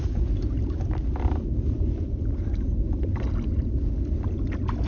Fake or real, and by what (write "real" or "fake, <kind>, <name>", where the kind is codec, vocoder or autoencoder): real